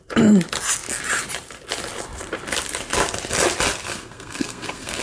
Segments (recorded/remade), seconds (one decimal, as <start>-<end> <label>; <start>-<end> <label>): 0.0-3.9 recorded; 3.9-5.0 remade